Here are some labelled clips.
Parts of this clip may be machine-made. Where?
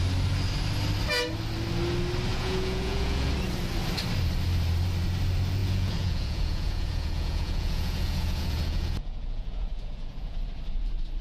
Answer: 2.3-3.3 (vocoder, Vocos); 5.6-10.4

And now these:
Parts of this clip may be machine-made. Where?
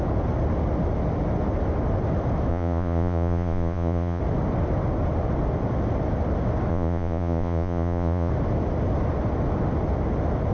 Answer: 2.5-4.2 (vocoder, Vocos); 6.7-8.3